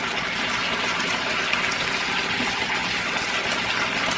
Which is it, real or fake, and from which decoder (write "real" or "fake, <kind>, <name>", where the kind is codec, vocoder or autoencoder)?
real